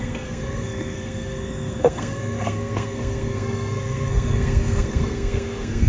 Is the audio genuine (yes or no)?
no